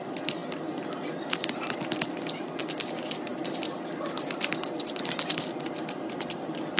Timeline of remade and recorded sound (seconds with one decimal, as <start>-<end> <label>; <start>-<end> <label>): 0.0-3.3 recorded; 3.3-6.8 remade